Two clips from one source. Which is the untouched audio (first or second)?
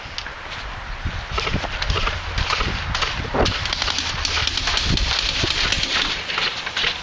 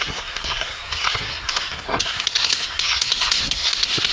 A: first